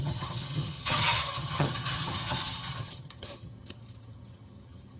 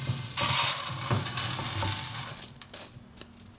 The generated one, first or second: first